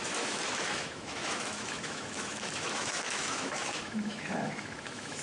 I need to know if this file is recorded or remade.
remade